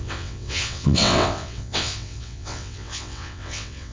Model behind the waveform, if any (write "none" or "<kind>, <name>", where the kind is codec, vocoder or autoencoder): vocoder, WaveNeXt